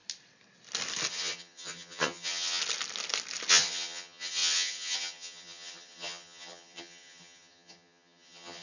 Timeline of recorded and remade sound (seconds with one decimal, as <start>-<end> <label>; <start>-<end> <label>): 0.0-1.1 recorded; 1.1-2.6 remade; 2.6-3.5 recorded; 3.5-8.6 remade